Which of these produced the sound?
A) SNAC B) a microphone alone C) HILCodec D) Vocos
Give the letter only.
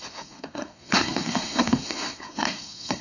A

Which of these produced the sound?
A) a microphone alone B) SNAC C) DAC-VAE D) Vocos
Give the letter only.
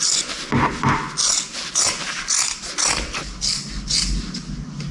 A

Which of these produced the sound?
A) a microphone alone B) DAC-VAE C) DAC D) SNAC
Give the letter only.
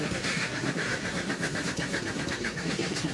D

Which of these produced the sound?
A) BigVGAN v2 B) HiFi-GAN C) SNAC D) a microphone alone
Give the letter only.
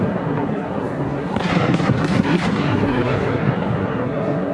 C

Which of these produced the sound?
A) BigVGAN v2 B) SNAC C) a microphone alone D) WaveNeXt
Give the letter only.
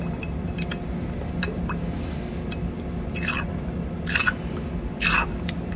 C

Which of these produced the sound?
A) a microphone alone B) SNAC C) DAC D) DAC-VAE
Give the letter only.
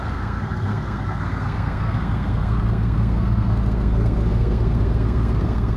B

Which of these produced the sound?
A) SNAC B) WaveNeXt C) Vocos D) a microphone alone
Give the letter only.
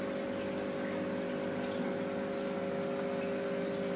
D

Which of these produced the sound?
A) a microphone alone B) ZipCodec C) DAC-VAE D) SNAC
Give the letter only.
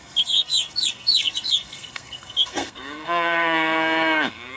D